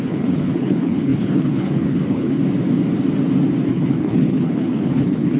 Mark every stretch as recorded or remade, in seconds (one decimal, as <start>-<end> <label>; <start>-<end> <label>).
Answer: 0.0-2.4 remade; 2.4-3.7 recorded; 3.7-5.4 remade